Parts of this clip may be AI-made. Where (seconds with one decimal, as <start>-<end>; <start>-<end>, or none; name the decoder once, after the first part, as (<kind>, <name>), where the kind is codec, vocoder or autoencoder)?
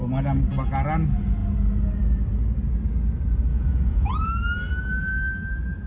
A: 3.5-4.1 (vocoder, Vocos)